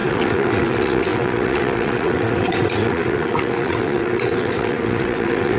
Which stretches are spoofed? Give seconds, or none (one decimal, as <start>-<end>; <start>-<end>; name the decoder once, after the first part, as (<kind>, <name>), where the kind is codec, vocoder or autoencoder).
0.0-5.6 (vocoder, WaveNeXt)